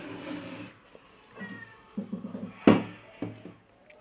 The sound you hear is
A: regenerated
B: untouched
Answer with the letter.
B